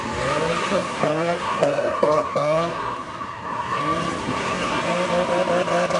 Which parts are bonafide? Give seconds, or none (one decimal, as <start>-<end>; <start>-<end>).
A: 0.0-0.6; 3.8-4.2; 4.8-6.0